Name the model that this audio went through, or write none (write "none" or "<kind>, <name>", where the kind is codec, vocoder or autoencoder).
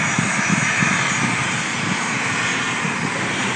none